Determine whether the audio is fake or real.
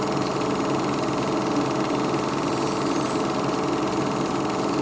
real